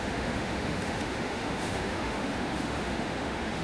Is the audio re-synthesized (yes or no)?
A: yes